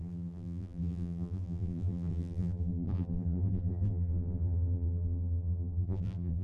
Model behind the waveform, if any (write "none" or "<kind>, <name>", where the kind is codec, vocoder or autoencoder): vocoder, BigVGAN v2